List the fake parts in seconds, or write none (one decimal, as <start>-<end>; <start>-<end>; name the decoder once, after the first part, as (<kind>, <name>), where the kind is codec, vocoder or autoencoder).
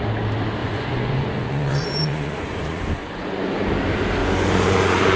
0.6-3.7 (vocoder, Vocos); 4.2-5.2